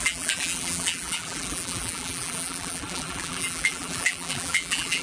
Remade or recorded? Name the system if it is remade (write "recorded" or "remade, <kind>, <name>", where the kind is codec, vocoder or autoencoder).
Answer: remade, vocoder, BigVGAN v2